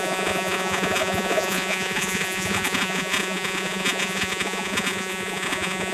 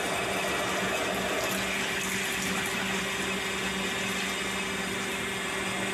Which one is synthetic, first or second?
first